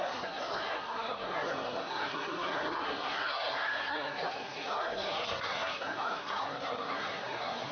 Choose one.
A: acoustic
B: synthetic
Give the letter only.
B